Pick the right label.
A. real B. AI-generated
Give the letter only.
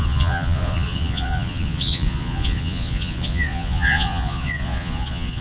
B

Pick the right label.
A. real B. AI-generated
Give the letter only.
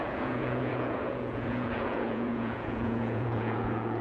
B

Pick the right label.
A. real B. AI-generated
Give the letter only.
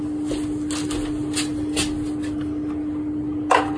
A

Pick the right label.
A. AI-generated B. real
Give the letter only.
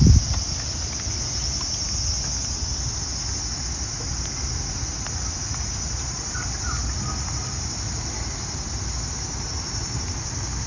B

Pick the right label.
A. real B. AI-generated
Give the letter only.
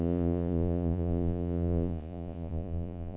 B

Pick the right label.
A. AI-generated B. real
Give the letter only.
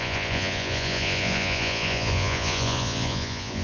A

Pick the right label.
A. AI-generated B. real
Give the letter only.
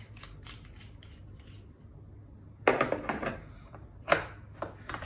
B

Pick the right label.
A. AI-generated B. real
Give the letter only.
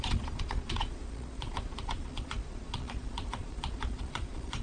A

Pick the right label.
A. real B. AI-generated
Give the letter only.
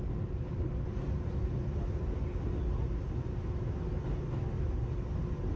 A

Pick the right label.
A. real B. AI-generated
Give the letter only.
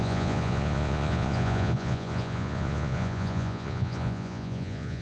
B